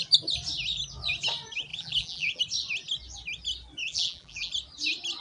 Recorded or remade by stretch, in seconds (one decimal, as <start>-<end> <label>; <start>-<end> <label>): 0.0-1.7 recorded; 1.7-2.4 remade; 2.4-3.8 recorded; 3.8-4.5 remade; 4.5-5.2 recorded